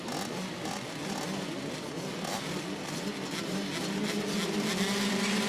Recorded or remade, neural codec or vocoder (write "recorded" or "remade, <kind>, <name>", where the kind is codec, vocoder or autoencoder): recorded